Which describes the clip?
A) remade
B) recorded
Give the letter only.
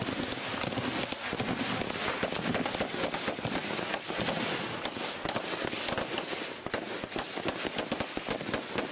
B